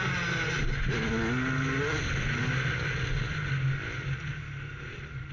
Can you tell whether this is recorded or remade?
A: recorded